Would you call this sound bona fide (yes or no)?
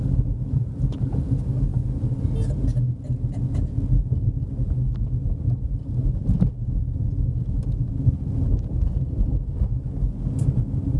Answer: yes